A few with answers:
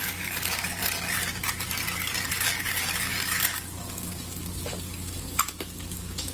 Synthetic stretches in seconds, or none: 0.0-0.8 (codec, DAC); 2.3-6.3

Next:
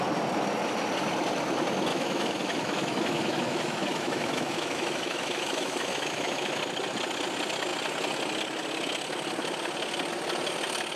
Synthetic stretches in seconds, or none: 1.9-6.6 (autoencoder, DAC-VAE)

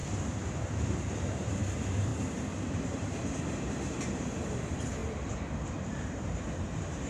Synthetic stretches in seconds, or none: 0.0-2.1 (vocoder, BigVGAN v2); 2.7-5.0; 5.7-7.1

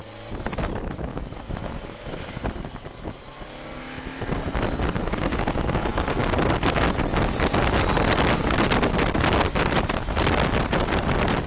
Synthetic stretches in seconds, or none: 1.1-2.4 (autoencoder, DAC-VAE)